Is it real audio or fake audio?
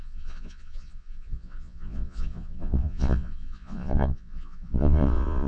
fake